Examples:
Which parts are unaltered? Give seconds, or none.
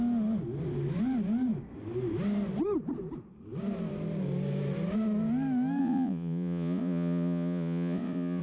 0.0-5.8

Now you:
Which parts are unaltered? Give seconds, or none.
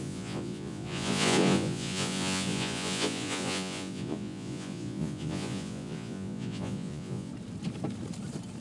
7.3-8.6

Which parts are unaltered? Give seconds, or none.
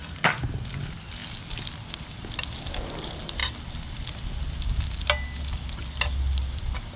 0.0-7.0